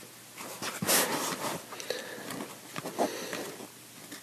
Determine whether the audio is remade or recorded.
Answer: recorded